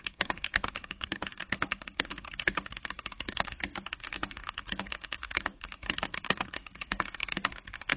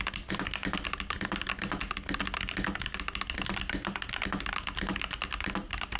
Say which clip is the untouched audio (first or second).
second